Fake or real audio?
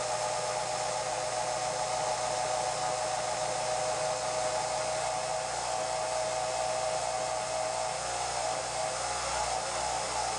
real